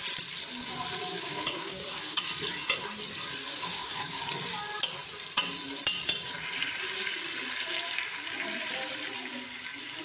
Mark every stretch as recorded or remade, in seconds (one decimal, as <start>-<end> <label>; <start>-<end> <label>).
0.0-1.1 recorded; 1.1-2.2 remade; 2.2-3.5 recorded; 3.5-4.2 remade; 4.2-10.0 recorded